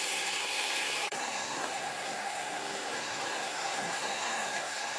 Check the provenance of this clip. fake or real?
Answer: fake